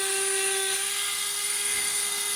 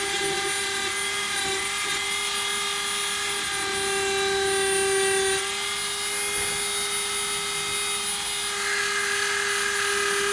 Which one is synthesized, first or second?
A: first